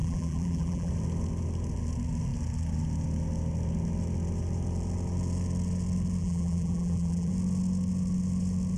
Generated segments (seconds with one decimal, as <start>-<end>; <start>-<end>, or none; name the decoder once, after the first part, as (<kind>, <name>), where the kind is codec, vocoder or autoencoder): 0.0-0.9 (vocoder, BigVGAN v2); 6.2-7.3